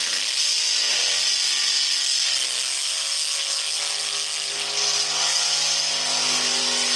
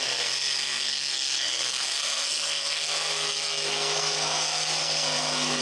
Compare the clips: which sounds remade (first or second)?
second